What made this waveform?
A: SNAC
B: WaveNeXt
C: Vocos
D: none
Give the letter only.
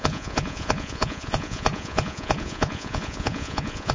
C